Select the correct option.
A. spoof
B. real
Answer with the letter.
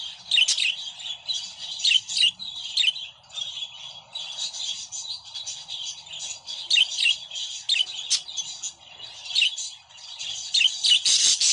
B